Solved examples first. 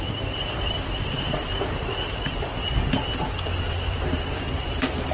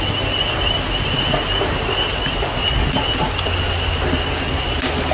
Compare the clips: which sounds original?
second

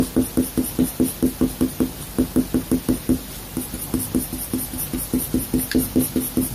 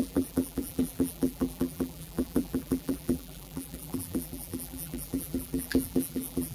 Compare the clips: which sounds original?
first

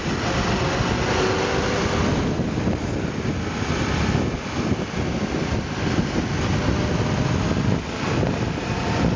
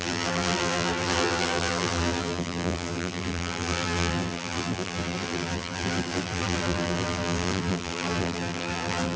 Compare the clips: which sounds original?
first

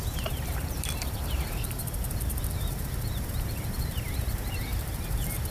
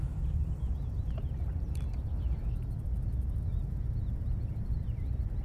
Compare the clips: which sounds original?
second